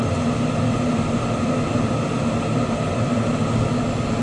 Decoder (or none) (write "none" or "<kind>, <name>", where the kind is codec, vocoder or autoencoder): none